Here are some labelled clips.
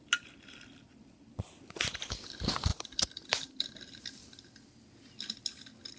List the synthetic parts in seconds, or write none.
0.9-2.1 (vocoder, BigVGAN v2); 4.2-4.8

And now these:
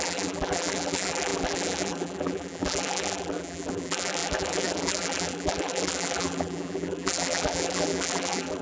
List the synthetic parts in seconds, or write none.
0.0-8.6 (vocoder, BigVGAN v2)

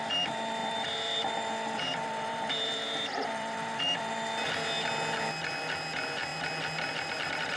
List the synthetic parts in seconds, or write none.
0.6-4.1 (vocoder, BigVGAN v2)

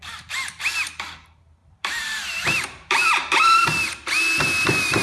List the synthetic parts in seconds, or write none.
1.6-3.6 (vocoder, BigVGAN v2)

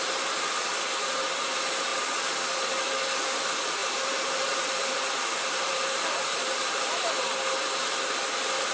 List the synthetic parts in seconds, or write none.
3.8-7.1 (vocoder, BigVGAN v2)

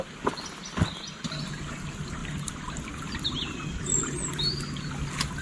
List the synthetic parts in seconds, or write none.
none

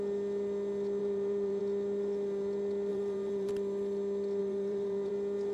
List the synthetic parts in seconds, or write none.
1.0-1.6 (vocoder, BigVGAN v2); 2.9-3.5; 4.4-5.1

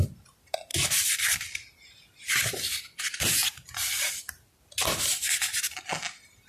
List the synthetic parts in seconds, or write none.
none